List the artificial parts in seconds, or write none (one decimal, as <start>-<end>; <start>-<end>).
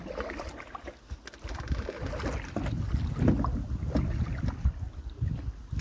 none